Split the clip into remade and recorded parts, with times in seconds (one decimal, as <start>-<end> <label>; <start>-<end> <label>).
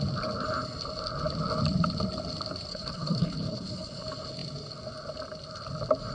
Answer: 0.0-2.7 recorded; 2.7-4.0 remade; 4.0-6.1 recorded